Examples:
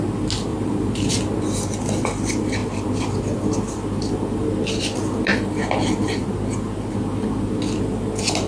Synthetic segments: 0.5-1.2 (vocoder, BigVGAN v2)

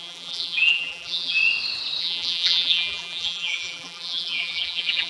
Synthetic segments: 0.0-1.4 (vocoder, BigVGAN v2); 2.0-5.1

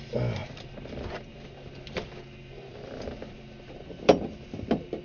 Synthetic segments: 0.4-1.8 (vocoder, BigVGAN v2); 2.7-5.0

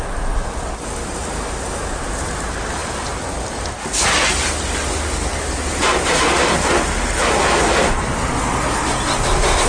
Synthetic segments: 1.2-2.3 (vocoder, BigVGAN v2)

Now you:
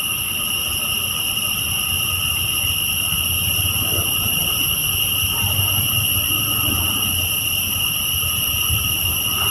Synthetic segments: none

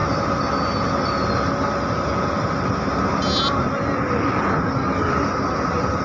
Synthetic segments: none

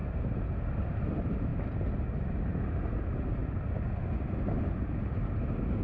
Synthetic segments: 0.7-1.5 (vocoder, BigVGAN v2); 2.7-3.4; 5.3-5.8